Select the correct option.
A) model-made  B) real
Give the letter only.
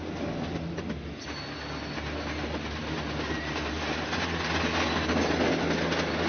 B